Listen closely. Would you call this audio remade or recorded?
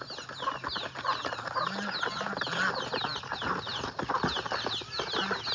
recorded